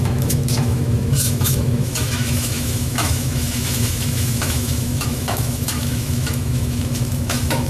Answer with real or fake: fake